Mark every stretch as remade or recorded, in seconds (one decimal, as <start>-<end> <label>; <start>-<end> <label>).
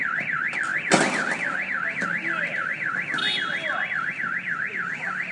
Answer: 0.0-5.3 recorded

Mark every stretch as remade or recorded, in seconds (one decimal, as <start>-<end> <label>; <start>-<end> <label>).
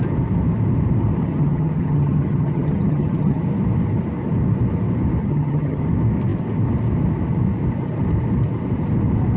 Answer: 0.0-1.2 recorded; 1.2-3.4 remade; 3.4-5.2 recorded; 5.2-5.8 remade; 5.8-9.4 recorded